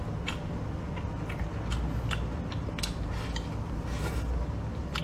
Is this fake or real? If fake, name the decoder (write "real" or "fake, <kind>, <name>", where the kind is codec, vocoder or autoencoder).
real